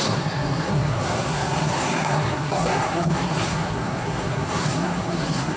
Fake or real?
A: fake